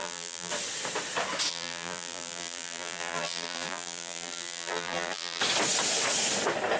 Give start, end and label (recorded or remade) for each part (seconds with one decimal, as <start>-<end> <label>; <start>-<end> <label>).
0.0-0.5 remade; 0.5-1.5 recorded; 1.5-5.4 remade; 5.4-6.8 recorded